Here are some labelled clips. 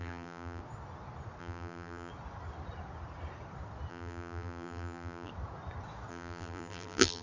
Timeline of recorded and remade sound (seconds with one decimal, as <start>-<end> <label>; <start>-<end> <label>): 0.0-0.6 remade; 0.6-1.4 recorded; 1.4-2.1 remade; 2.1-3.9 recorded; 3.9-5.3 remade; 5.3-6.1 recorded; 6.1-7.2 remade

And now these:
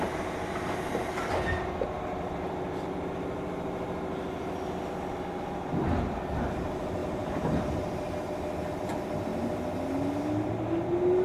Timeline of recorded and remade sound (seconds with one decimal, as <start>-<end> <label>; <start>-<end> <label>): 0.0-11.2 recorded

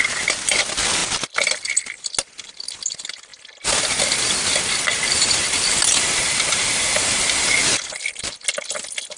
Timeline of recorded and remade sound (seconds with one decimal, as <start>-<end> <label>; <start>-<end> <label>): 0.0-9.2 recorded

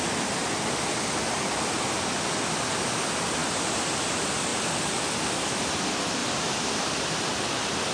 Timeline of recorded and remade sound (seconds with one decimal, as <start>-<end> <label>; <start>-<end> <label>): 0.0-3.4 recorded; 3.4-4.0 remade; 4.0-6.2 recorded; 6.2-7.1 remade; 7.1-7.9 recorded